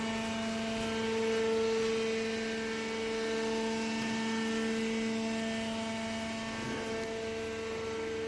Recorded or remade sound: recorded